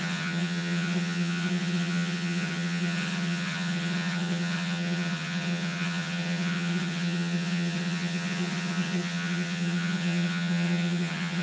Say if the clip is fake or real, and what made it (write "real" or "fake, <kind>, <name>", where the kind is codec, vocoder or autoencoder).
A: fake, vocoder, HiFi-GAN